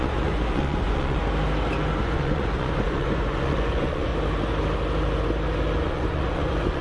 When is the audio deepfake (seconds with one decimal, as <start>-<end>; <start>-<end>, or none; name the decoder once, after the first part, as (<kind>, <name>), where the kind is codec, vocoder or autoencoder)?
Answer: 0.0-1.2 (vocoder, Vocos); 2.0-4.1; 5.8-6.8

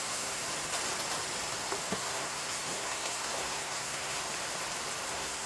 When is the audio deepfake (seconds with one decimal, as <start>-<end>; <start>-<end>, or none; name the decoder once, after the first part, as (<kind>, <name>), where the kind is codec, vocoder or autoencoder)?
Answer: 0.0-0.4 (codec, SNAC); 1.9-4.2; 5.1-5.5

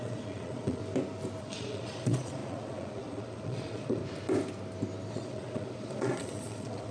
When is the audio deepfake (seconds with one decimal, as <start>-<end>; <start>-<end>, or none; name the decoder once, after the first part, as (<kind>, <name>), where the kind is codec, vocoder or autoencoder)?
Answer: 0.0-0.8 (vocoder, Vocos); 1.4-4.0; 5.1-6.9

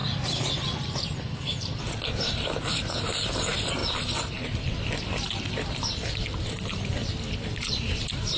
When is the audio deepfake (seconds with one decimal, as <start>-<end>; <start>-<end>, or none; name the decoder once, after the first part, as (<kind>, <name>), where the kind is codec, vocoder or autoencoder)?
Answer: none

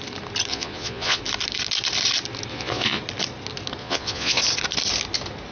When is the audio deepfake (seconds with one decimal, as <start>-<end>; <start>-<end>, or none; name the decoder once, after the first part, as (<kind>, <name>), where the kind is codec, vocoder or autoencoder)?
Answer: 0.5-1.2 (vocoder, Vocos); 2.5-3.0; 3.8-4.4

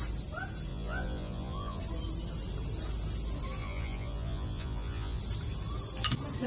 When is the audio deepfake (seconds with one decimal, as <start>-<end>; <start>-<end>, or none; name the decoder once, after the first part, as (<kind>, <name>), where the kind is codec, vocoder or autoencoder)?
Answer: 0.7-1.8 (vocoder, Vocos); 3.6-5.2